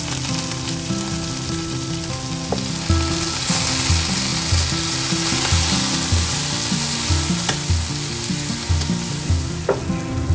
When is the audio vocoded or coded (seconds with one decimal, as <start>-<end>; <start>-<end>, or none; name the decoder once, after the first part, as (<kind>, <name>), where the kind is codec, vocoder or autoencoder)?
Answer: none